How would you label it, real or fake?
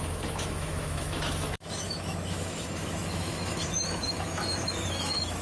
fake